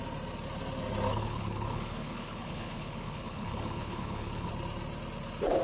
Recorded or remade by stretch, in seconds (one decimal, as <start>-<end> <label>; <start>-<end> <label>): 0.0-1.1 recorded; 1.1-4.5 remade; 4.5-5.6 recorded